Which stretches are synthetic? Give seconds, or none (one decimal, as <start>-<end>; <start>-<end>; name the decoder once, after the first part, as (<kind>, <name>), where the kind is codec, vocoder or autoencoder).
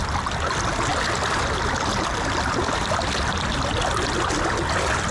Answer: none